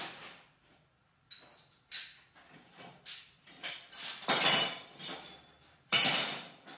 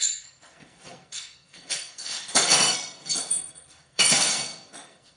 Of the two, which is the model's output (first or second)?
second